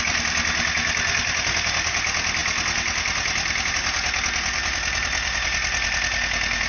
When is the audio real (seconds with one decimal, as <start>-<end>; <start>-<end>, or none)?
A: 0.0-6.7

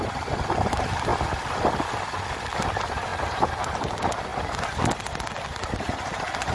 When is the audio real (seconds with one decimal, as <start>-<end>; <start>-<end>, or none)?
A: 0.0-6.5

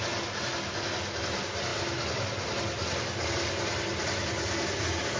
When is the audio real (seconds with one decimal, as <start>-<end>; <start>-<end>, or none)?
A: 0.0-5.2

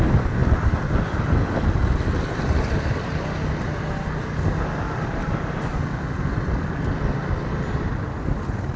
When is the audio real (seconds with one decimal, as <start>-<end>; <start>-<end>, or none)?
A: 0.0-8.8

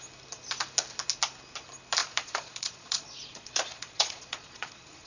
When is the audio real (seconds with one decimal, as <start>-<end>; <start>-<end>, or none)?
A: 0.0-2.0

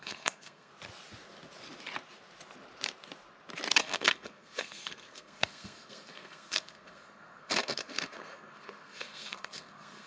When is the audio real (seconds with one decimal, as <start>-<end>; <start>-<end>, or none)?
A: 0.7-3.8

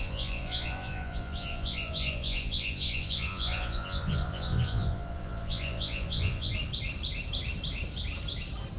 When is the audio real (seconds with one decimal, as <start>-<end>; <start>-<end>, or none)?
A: 6.5-8.8

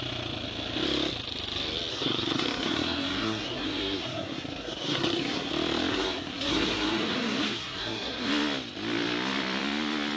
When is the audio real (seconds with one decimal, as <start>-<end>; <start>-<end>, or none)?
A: 0.0-1.9; 5.5-5.9; 8.3-10.2